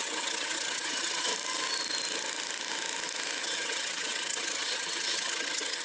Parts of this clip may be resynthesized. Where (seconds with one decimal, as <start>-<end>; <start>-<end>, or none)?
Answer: 0.0-1.3; 3.4-5.8